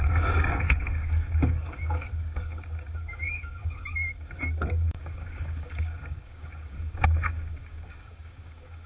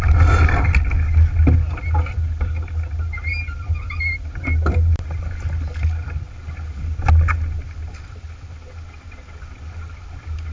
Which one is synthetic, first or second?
first